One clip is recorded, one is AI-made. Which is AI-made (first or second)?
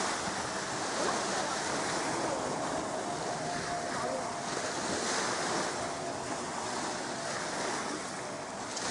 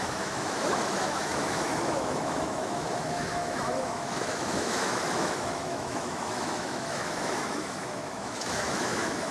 second